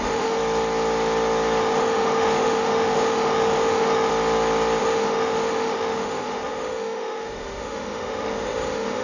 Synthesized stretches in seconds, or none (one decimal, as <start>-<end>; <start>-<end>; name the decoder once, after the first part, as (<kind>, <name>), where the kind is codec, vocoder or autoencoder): 0.0-0.4 (autoencoder, DAC-VAE); 1.6-4.1; 4.8-9.0